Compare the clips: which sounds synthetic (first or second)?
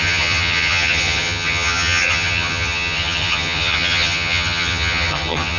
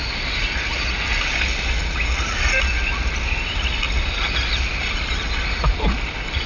first